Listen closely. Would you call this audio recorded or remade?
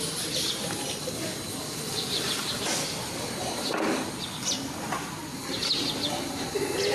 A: recorded